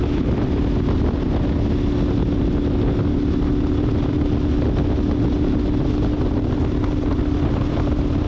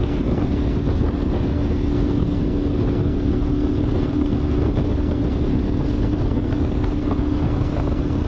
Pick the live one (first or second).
first